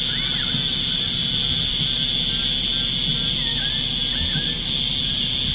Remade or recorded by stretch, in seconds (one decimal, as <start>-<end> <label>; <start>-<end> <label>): 0.0-5.5 recorded